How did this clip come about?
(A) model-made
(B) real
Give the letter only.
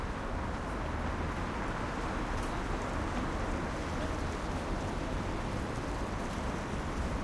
B